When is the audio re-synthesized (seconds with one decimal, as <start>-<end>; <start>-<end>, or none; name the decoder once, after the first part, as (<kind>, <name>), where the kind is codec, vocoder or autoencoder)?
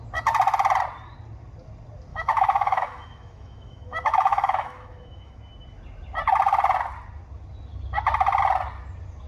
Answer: 2.1-5.4 (autoencoder, DAC-VAE)